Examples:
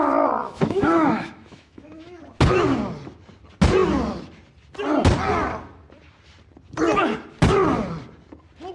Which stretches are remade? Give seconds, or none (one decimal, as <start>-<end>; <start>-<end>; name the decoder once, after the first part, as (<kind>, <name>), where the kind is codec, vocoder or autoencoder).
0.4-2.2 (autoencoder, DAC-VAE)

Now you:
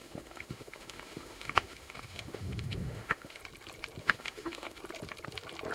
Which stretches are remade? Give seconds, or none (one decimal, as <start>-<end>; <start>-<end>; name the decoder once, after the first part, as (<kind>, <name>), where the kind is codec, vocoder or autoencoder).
0.0-3.4 (autoencoder, DAC-VAE); 4.0-4.8

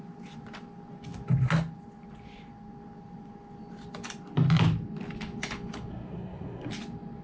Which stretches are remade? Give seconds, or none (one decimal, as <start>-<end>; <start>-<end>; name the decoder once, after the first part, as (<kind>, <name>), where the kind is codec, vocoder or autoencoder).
5.9-6.7 (codec, SNAC)